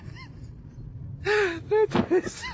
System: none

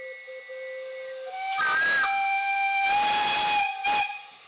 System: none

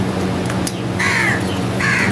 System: vocoder, Vocos